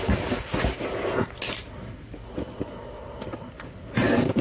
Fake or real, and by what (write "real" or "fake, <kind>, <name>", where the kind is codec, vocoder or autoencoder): real